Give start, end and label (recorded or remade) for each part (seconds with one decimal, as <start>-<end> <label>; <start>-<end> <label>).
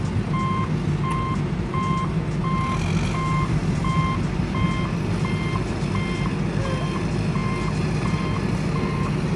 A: 0.0-9.4 recorded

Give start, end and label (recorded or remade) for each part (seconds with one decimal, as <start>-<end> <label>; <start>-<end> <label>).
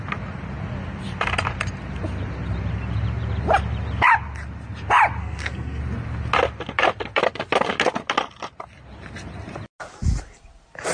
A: 0.0-5.2 recorded; 5.2-5.8 remade; 5.8-10.9 recorded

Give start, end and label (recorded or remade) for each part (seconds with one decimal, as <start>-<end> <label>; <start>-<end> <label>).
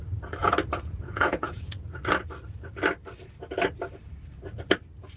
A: 0.0-0.4 recorded; 0.4-1.8 remade; 1.8-5.2 recorded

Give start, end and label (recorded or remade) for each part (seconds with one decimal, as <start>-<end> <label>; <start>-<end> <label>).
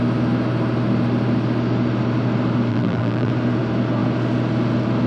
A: 0.0-2.7 recorded; 2.7-3.3 remade; 3.3-5.1 recorded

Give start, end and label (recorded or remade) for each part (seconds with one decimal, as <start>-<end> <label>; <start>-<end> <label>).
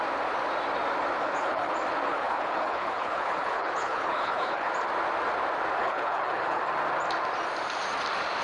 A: 0.0-1.2 recorded; 1.2-1.7 remade; 1.7-2.1 recorded; 2.1-4.7 remade; 4.7-5.8 recorded; 5.8-6.6 remade; 6.6-8.4 recorded